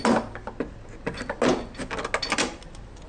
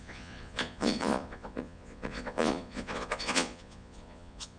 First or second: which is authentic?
first